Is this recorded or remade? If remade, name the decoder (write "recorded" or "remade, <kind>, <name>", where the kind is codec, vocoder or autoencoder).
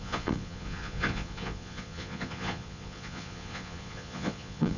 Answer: remade, vocoder, Vocos